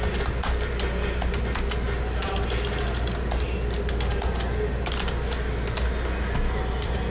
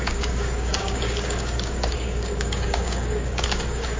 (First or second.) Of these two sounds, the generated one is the second